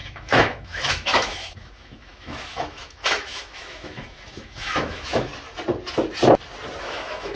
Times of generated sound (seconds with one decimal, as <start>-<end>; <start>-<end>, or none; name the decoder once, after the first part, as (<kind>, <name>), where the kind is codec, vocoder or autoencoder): 0.0-5.3 (autoencoder, DAC-VAE); 6.8-7.4